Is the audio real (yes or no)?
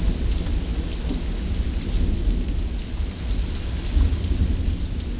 yes